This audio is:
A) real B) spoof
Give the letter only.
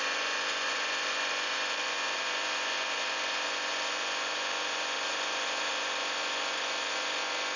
B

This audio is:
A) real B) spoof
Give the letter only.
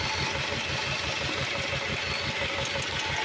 A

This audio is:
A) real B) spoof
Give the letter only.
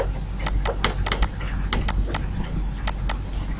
A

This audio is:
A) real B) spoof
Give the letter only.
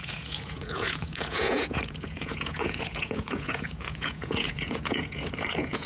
B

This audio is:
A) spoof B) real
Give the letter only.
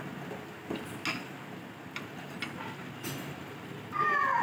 B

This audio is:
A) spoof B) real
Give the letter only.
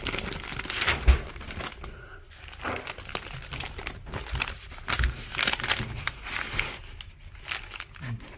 B